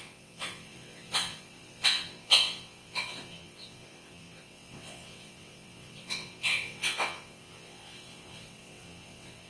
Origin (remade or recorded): remade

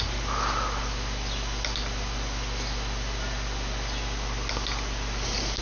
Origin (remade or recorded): recorded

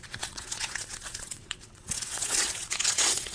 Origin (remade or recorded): remade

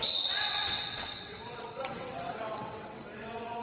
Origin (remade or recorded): remade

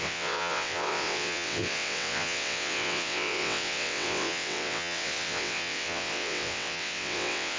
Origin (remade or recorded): remade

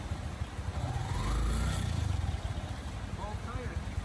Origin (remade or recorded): recorded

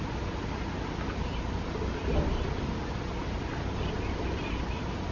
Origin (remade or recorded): recorded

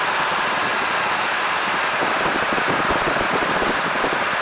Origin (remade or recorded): recorded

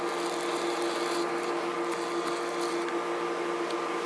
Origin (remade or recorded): recorded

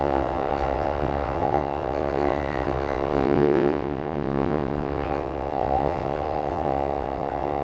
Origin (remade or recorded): remade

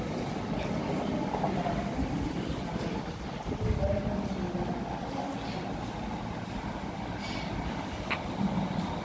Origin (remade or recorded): recorded